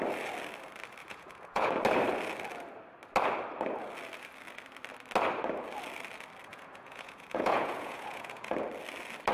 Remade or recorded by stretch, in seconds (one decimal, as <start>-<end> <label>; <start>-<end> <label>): 0.0-1.0 recorded; 1.0-1.7 remade; 1.7-6.5 recorded; 6.5-8.5 remade; 8.5-9.3 recorded